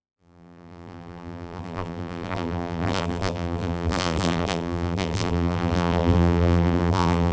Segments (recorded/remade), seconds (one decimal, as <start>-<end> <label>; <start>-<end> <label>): 0.0-7.3 remade

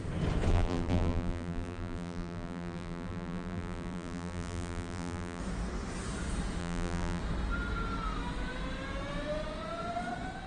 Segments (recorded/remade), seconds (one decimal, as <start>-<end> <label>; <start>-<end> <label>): 0.0-0.5 recorded; 0.5-5.4 remade; 5.4-6.6 recorded; 6.6-7.2 remade; 7.2-10.5 recorded

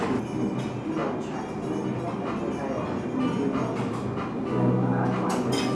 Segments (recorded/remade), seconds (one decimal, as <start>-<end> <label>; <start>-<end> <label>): 0.0-5.7 recorded

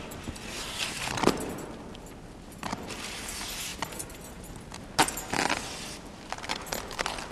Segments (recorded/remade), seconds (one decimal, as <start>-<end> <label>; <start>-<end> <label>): 0.0-7.3 recorded

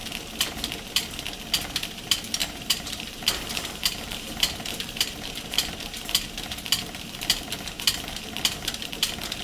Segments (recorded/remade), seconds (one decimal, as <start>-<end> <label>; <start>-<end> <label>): 0.0-2.4 recorded; 2.4-5.7 remade; 5.7-9.4 recorded

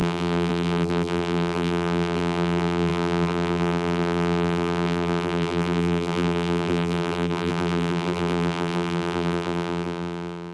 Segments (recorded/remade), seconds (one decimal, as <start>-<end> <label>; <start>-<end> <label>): 0.0-10.5 remade